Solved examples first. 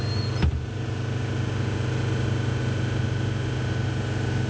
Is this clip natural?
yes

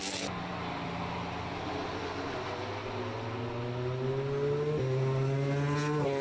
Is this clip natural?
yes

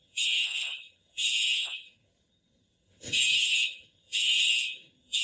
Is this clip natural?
no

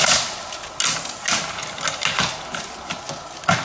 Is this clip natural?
yes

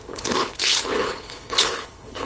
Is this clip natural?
no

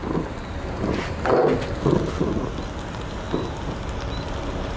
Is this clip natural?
yes